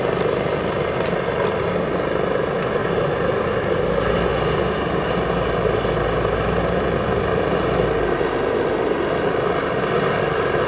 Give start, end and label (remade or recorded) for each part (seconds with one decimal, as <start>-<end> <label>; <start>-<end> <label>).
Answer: 0.0-2.8 recorded; 2.8-3.6 remade; 3.6-10.7 recorded